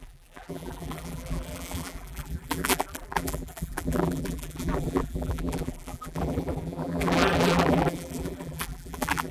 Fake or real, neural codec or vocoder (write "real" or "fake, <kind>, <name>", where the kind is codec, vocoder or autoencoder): fake, vocoder, BigVGAN v2